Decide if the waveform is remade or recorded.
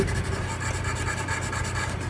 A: recorded